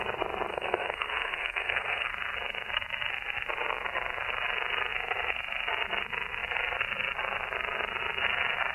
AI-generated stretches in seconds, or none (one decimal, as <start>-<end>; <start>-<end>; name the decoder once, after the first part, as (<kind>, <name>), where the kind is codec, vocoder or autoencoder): 0.5-2.1 (codec, SNAC)